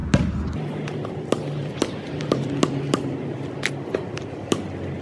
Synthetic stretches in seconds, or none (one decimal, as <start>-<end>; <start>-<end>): 1.6-4.6